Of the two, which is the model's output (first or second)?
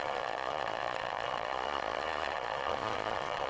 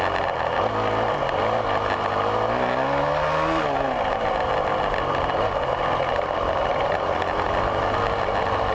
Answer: first